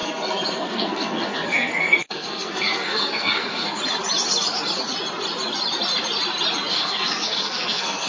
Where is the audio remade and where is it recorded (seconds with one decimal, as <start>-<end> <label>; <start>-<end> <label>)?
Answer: 0.0-3.8 remade; 3.8-6.7 recorded; 6.7-8.1 remade